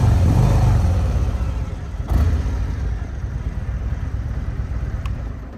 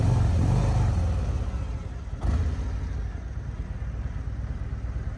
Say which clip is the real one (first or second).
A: second